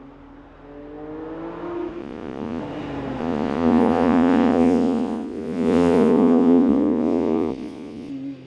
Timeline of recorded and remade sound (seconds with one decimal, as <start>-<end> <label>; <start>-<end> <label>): 0.0-2.0 recorded; 2.0-2.6 remade; 2.6-3.2 recorded; 3.2-8.1 remade; 8.1-8.5 recorded